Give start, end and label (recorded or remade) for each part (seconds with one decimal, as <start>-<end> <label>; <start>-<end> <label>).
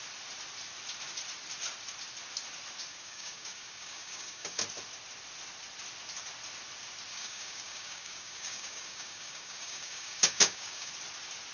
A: 0.0-2.9 recorded; 2.9-4.6 remade; 4.6-7.1 recorded; 7.1-10.9 remade; 10.9-11.5 recorded